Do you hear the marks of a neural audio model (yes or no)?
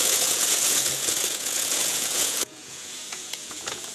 yes